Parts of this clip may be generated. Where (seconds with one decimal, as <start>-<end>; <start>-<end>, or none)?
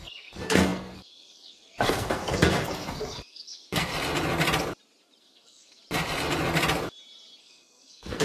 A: 0.0-3.9; 5.2-5.8; 7.4-8.2